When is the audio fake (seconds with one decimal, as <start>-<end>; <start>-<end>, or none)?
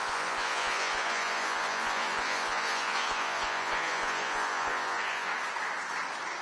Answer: 0.0-5.3